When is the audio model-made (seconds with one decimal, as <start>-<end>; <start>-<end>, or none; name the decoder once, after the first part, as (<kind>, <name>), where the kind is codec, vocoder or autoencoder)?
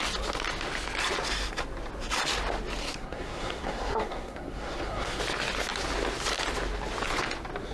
2.8-5.2 (codec, SNAC)